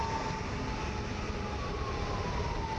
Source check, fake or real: real